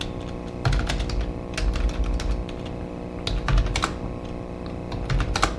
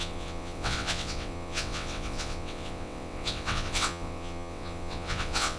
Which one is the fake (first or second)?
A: second